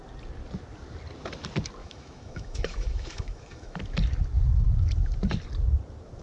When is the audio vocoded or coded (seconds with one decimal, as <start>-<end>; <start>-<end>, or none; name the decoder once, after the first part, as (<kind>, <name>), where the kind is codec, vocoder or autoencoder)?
1.8-3.8 (autoencoder, DAC-VAE)